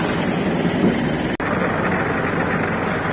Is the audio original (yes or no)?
yes